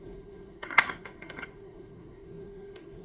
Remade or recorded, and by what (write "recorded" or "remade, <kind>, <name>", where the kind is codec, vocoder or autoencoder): remade, codec, SNAC